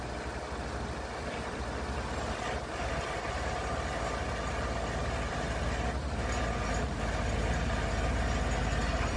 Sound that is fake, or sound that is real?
real